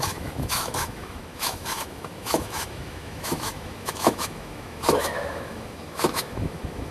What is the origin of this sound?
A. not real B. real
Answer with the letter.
A